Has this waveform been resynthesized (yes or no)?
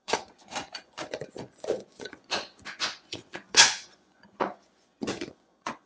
yes